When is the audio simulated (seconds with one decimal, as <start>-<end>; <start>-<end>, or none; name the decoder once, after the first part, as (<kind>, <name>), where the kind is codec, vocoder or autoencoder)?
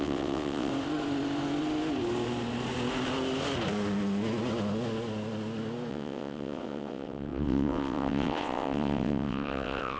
0.0-0.7 (vocoder, WaveNeXt); 5.9-10.0